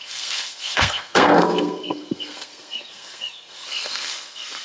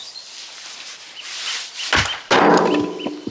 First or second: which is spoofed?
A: first